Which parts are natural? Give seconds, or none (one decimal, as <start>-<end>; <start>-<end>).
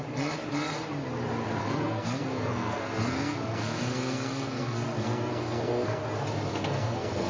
0.0-1.6; 6.0-6.5